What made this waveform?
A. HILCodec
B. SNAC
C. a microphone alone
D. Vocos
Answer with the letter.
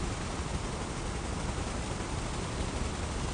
C